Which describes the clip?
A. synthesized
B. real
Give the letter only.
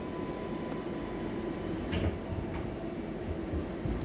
B